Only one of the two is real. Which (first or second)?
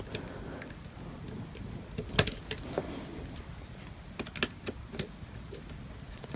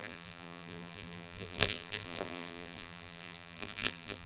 first